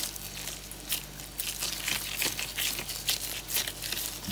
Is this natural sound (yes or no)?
yes